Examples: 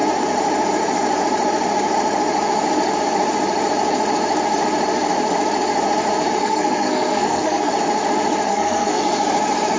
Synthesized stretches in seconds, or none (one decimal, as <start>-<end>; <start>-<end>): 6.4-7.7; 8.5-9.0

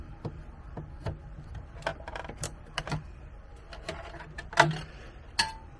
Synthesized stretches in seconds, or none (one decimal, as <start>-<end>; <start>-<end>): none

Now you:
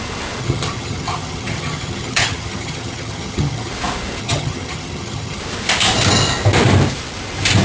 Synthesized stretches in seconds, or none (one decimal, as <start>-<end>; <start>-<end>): 0.4-3.7; 4.2-5.4